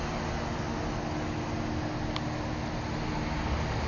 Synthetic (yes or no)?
no